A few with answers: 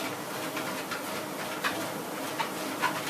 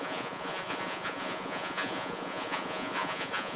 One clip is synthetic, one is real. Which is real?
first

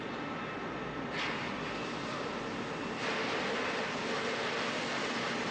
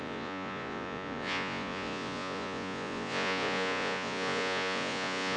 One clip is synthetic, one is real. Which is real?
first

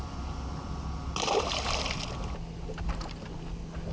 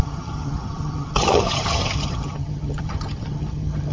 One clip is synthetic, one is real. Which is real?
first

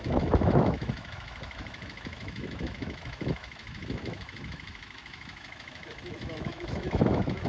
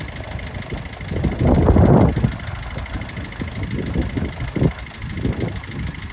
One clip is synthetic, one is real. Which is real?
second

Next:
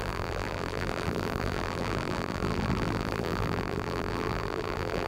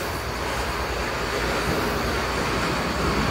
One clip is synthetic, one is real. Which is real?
second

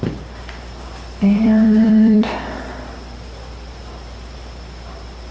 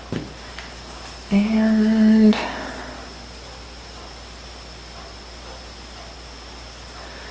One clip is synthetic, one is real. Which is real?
second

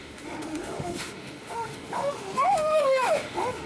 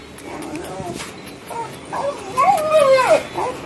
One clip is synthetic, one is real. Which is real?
second